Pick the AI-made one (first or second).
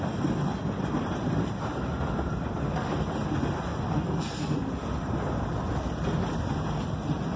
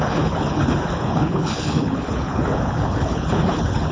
second